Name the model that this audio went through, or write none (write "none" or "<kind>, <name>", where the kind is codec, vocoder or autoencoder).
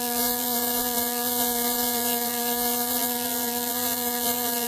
vocoder, BigVGAN v2